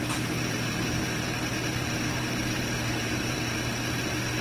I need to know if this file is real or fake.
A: fake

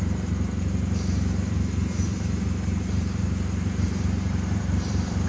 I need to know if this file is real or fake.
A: fake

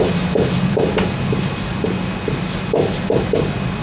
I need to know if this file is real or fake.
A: real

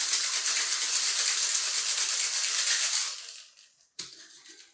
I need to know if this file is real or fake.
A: real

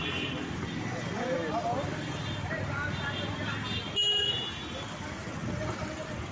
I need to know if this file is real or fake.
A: real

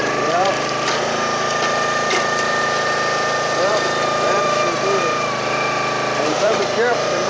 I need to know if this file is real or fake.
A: fake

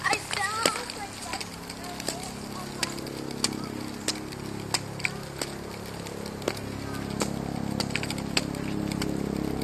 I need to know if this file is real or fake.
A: real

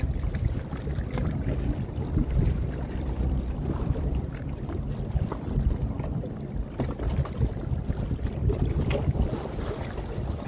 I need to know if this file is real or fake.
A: fake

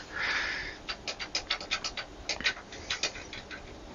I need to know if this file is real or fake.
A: real